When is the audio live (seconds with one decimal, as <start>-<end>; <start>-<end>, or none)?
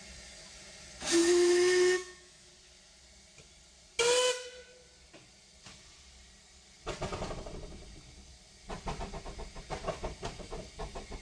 0.0-1.2; 2.5-11.2